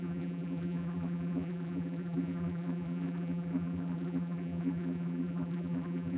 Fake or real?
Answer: fake